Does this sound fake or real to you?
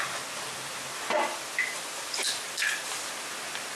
real